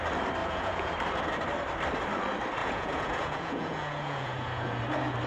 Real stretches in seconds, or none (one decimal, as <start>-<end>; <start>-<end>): 0.0-0.4; 0.9-2.6; 4.8-5.3